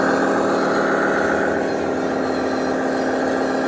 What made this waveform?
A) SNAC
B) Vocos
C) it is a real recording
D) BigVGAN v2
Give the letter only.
C